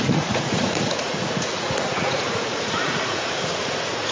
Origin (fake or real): fake